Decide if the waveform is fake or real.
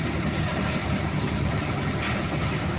real